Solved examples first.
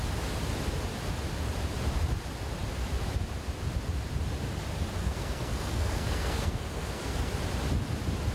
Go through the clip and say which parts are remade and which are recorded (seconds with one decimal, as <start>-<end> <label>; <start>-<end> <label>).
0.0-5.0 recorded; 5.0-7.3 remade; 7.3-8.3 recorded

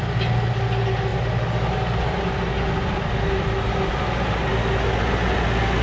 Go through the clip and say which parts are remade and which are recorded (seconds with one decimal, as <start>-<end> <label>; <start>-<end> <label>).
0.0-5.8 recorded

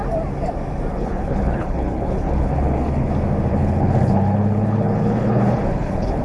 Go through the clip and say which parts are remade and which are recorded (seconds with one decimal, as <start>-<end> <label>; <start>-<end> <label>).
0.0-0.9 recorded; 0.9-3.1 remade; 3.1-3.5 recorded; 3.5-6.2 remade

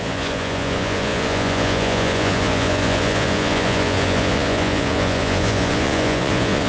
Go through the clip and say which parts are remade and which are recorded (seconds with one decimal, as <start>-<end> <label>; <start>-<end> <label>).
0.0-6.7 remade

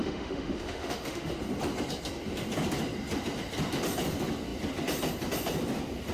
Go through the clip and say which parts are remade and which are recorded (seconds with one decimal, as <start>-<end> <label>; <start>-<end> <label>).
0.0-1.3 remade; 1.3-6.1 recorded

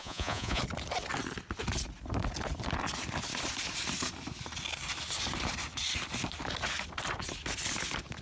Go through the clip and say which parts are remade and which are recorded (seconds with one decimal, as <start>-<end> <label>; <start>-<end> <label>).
0.0-0.6 remade; 0.6-8.2 recorded

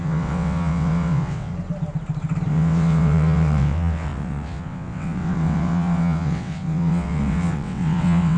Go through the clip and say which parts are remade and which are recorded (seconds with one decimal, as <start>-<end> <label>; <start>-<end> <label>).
0.0-1.5 remade; 1.5-2.5 recorded; 2.5-8.4 remade

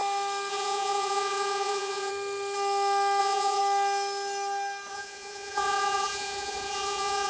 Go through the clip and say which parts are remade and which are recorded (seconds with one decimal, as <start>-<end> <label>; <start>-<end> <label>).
0.0-0.5 recorded; 0.5-2.1 remade; 2.1-3.2 recorded; 3.2-3.6 remade; 3.6-4.9 recorded; 4.9-7.3 remade